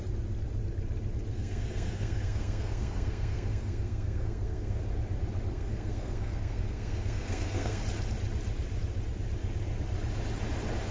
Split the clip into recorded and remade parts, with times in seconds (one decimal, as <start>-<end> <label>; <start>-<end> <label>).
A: 0.0-1.3 recorded; 1.3-4.8 remade; 4.8-5.5 recorded; 5.5-7.8 remade; 7.8-10.9 recorded